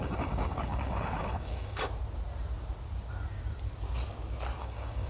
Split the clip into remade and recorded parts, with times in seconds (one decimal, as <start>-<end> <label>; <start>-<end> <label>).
0.0-1.8 remade; 1.8-4.6 recorded; 4.6-5.1 remade